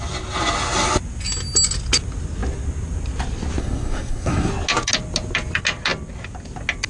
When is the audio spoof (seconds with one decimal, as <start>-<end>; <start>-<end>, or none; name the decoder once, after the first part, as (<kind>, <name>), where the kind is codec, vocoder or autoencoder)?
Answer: 3.6-4.5 (codec, SNAC)